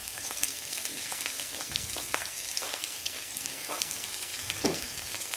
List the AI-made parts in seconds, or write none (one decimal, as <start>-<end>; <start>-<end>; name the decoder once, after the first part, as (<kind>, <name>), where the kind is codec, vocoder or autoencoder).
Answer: 0.0-5.4 (codec, SNAC)